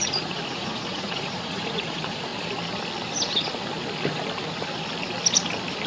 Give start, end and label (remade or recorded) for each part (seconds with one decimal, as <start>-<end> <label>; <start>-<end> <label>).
0.0-2.3 remade; 2.3-5.9 recorded